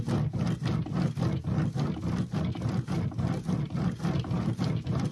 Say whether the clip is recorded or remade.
recorded